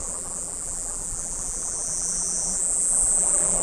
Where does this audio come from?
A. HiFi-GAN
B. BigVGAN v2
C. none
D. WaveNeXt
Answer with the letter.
B